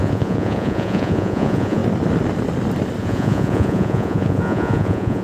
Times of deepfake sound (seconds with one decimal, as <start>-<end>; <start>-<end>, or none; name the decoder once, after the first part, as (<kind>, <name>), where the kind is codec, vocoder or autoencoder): 0.0-1.8 (vocoder, Vocos); 3.0-5.2